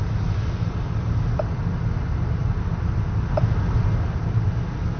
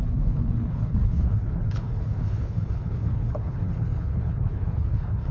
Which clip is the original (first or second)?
first